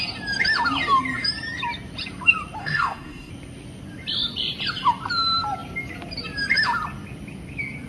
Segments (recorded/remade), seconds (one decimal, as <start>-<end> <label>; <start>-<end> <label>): 0.0-2.6 recorded; 2.6-3.3 remade; 3.3-7.9 recorded